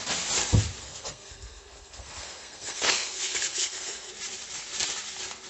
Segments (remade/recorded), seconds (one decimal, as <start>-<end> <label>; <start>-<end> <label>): 0.0-0.8 recorded; 0.8-4.1 remade; 4.1-5.5 recorded